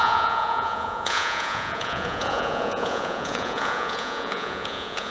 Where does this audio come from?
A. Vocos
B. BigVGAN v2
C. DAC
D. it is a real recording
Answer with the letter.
A